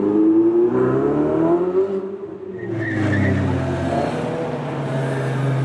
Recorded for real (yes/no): yes